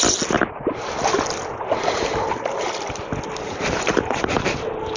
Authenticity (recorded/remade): recorded